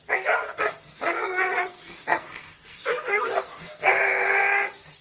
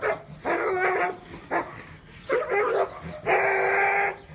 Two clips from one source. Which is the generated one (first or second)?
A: first